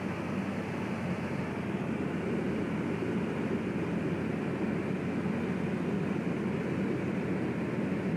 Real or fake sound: real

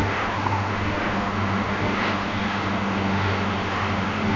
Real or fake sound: fake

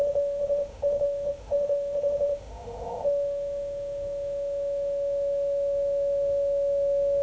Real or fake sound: fake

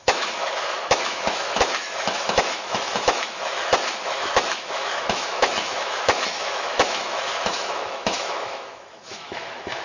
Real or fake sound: fake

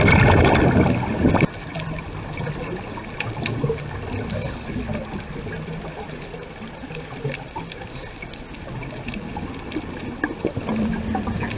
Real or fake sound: real